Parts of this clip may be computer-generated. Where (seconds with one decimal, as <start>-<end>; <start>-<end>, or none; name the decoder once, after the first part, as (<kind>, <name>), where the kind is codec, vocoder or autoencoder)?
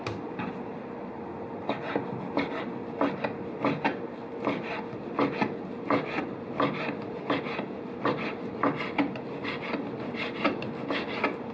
0.7-1.2 (vocoder, BigVGAN v2)